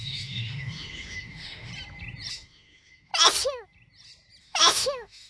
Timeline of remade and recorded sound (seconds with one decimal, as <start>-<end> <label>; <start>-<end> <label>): 0.0-1.7 remade; 1.7-2.3 recorded; 2.3-3.1 remade; 3.1-4.4 recorded; 4.4-5.3 remade